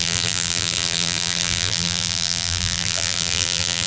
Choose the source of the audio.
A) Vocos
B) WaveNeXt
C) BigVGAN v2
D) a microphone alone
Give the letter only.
C